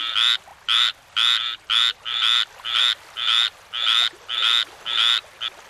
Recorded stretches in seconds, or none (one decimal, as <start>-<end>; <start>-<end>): 0.0-5.7